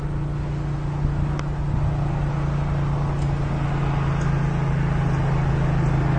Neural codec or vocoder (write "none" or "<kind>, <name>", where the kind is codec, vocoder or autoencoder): none